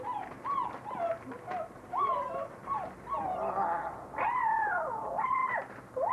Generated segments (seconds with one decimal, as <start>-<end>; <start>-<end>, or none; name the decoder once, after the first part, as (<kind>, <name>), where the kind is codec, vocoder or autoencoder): 0.0-0.5 (vocoder, BigVGAN v2); 1.2-6.1